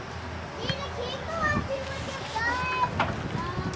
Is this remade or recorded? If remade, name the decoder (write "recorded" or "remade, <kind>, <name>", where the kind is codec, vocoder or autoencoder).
recorded